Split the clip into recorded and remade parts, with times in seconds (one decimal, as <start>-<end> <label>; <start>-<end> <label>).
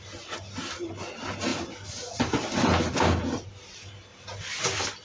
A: 0.0-1.5 recorded; 1.5-2.3 remade; 2.3-5.0 recorded